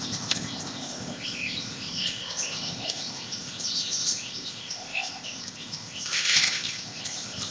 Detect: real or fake fake